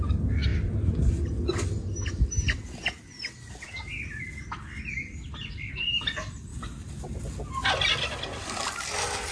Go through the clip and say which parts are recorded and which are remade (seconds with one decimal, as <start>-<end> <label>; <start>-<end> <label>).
0.0-9.3 recorded